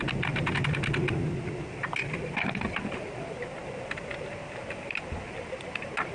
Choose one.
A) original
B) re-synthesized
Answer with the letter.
A